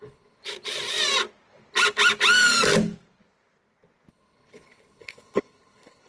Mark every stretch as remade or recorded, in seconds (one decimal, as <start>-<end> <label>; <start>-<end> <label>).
0.0-0.4 remade; 0.4-4.1 recorded; 4.1-6.1 remade